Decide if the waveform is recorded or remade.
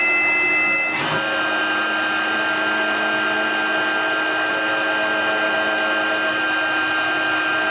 recorded